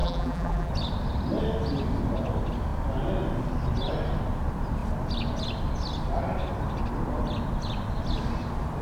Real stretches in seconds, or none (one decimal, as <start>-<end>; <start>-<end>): 0.7-8.8